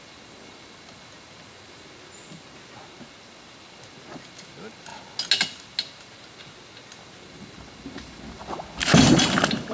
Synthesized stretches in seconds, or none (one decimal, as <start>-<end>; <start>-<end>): none